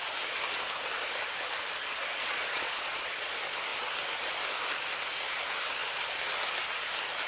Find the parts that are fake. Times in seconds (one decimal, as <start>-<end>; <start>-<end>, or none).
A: 2.1-3.3